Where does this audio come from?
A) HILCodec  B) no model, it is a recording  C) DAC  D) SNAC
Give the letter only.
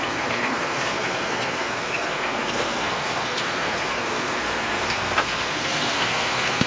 D